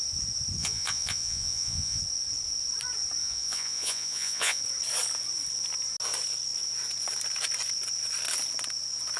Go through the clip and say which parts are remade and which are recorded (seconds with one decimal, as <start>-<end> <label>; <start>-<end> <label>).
0.0-0.6 recorded; 0.6-2.0 remade; 2.0-3.2 recorded; 3.2-4.6 remade; 4.6-9.2 recorded